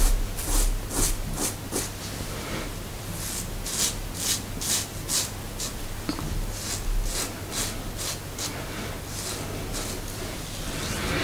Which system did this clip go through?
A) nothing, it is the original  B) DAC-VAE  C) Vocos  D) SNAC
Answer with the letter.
A